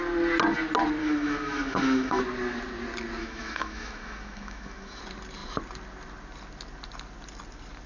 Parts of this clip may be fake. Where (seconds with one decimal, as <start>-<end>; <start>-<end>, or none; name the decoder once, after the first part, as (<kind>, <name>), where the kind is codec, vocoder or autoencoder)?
1.0-2.2 (autoencoder, DAC-VAE); 3.2-5.0